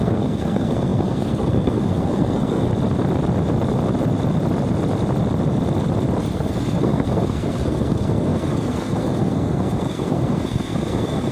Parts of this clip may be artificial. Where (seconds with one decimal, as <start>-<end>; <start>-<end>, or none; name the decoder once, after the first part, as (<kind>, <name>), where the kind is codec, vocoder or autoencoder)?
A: 0.0-2.7 (codec, SNAC); 6.3-11.3